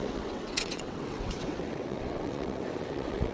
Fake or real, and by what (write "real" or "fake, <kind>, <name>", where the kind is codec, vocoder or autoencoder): fake, vocoder, WaveNeXt